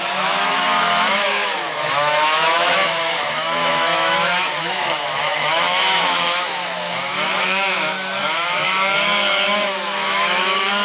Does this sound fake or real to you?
fake